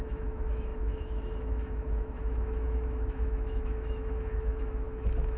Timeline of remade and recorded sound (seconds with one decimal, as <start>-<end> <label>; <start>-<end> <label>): 0.0-5.4 remade